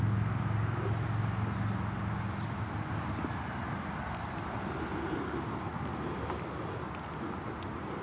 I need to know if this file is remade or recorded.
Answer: recorded